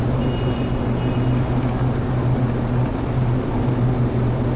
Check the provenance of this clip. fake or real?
real